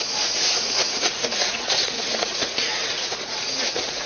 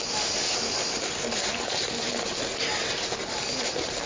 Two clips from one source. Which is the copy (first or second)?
first